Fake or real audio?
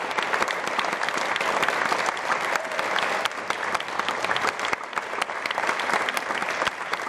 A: real